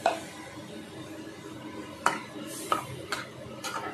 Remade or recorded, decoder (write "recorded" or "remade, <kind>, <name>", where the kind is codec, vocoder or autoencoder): recorded